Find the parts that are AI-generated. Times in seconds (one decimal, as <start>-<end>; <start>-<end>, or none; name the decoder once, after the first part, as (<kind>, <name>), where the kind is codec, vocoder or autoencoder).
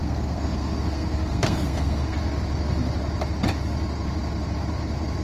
0.0-2.2 (codec, SNAC)